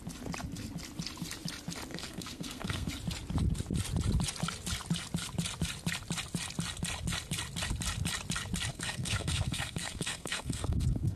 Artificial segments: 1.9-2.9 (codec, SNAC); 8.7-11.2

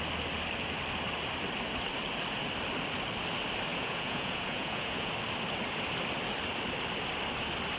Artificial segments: 3.7-5.1 (vocoder, Vocos)

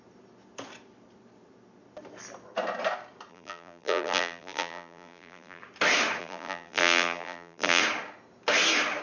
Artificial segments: 3.3-5.6 (vocoder, BigVGAN v2); 6.2-7.8

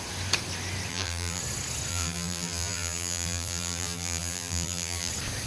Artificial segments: 0.9-1.4 (vocoder, BigVGAN v2); 1.9-5.1

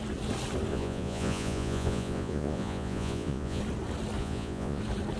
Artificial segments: 0.7-3.6 (vocoder, Vocos); 4.2-4.8

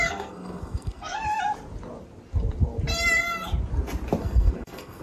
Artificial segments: 0.0-1.2 (codec, SNAC); 4.2-5.0

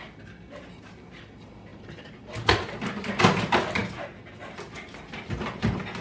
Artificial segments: 1.7-2.2 (vocoder, BigVGAN v2)